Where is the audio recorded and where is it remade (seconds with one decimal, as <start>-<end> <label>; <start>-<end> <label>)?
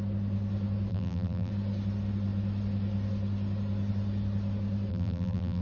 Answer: 0.0-0.9 recorded; 0.9-1.5 remade; 1.5-4.9 recorded; 4.9-5.6 remade